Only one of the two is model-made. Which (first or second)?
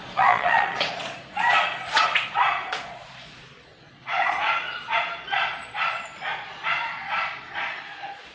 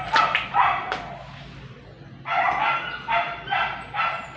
first